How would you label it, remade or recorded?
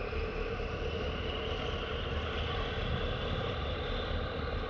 recorded